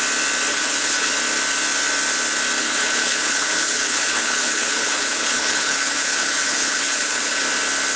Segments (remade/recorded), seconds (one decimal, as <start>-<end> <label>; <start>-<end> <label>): 0.0-0.5 recorded; 0.5-1.1 remade; 1.1-2.6 recorded; 2.6-7.4 remade; 7.4-8.0 recorded